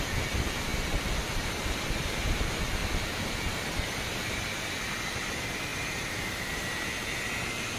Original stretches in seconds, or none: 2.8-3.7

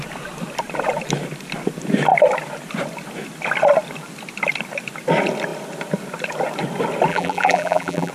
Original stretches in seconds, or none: 0.0-7.1